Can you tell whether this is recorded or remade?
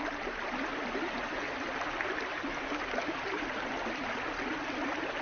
recorded